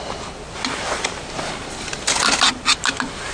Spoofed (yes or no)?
no